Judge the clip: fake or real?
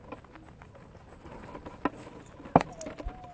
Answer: real